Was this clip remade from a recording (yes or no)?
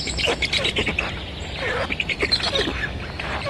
no